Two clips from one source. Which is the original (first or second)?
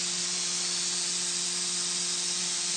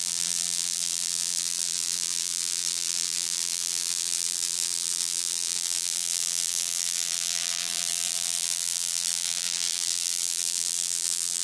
first